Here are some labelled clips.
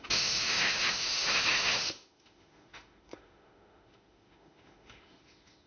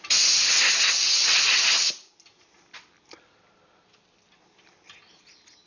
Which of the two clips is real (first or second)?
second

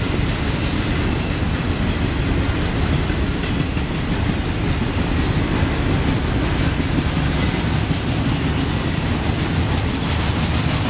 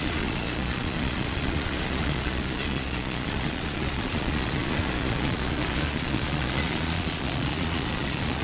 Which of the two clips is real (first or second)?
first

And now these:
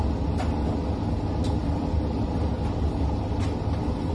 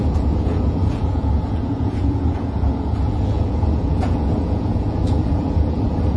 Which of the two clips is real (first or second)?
first